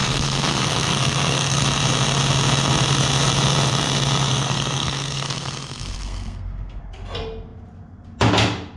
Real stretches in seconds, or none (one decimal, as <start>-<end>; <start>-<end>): 1.6-4.3; 6.8-8.8